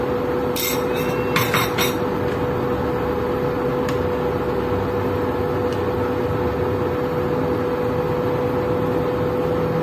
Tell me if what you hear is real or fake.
real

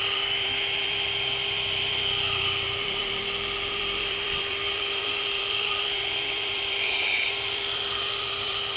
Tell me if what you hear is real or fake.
fake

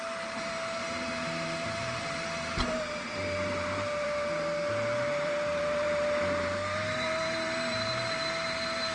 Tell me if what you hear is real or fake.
fake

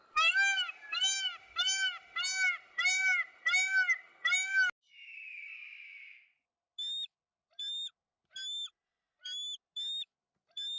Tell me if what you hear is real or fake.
real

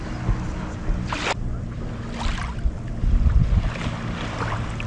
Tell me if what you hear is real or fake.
real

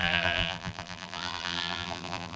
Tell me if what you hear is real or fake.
fake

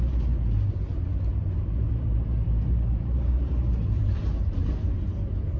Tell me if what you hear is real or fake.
fake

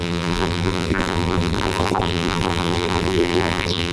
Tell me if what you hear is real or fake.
fake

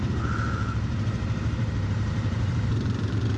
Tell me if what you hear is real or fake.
fake